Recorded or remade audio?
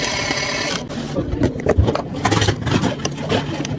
recorded